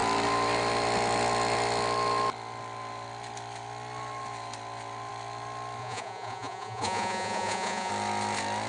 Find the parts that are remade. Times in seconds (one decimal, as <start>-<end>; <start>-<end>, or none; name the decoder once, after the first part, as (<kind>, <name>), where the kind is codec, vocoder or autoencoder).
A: 5.8-7.9 (vocoder, Vocos)